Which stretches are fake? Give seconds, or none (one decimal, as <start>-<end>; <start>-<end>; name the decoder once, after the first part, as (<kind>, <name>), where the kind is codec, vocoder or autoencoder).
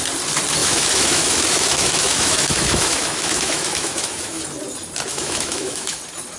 0.6-4.4 (autoencoder, DAC-VAE); 5.1-6.0